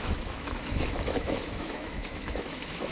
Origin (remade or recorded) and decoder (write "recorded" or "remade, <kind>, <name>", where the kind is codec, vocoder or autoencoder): remade, autoencoder, DAC-VAE